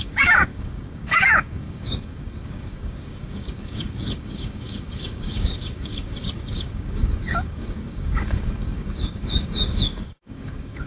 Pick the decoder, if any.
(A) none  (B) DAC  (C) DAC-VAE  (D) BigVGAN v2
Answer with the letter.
B